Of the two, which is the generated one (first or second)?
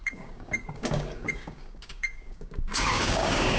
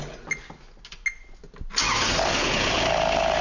first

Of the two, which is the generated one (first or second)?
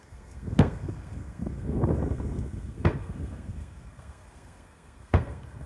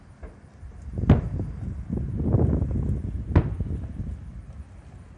first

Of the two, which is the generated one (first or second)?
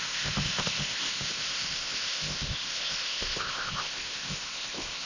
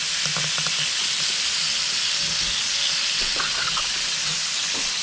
first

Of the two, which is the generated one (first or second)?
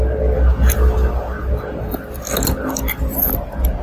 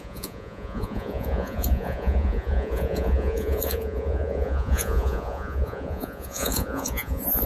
second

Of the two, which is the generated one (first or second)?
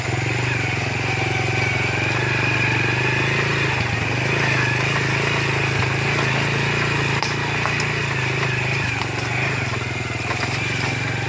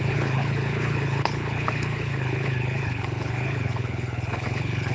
second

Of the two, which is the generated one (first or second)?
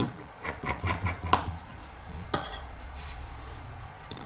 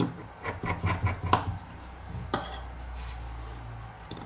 first